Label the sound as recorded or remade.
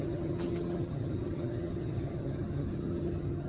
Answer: remade